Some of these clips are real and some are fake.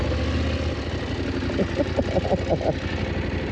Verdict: real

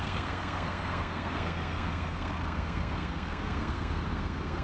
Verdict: fake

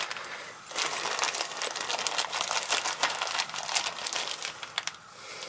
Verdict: real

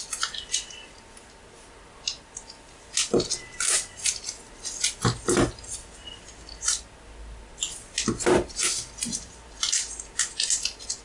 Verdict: real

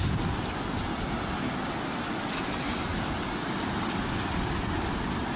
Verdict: real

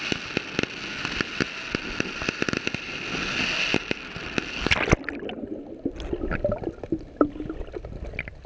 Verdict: real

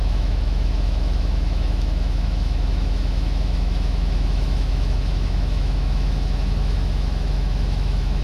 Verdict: fake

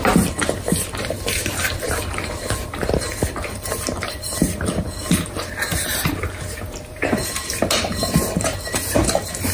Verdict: fake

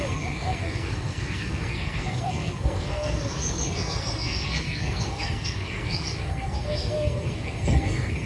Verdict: fake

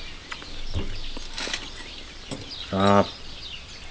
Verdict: real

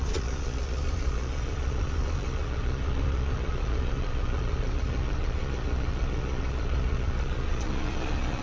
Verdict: fake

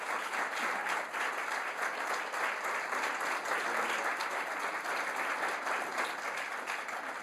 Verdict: real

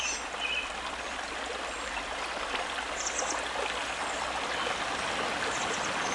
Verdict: real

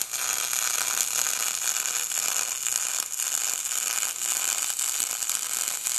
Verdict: real